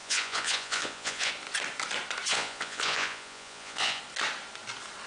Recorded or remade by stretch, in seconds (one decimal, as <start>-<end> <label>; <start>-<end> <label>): 0.0-1.3 remade; 1.3-2.3 recorded; 2.3-4.0 remade; 4.0-5.1 recorded